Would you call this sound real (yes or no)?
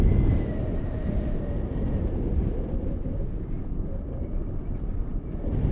yes